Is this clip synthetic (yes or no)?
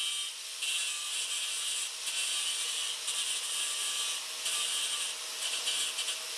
no